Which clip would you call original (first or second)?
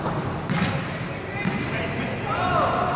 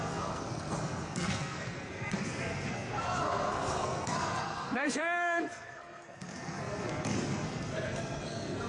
first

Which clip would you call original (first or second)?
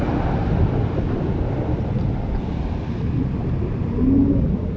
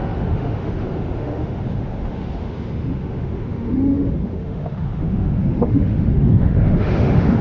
first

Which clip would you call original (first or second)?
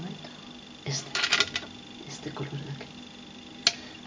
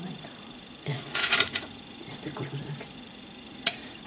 first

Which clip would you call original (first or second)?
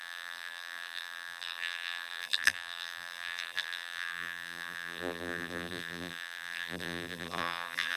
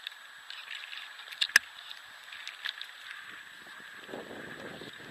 second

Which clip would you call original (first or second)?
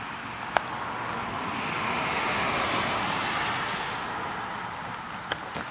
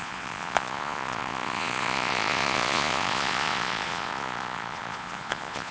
first